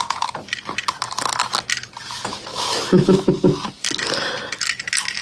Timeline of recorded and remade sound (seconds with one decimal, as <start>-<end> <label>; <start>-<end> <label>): 0.0-2.5 recorded; 2.5-3.3 remade; 3.3-5.2 recorded